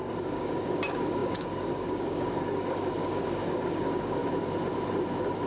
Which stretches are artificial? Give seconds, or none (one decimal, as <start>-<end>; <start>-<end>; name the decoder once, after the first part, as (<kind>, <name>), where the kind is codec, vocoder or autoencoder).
0.0-4.2 (codec, DAC)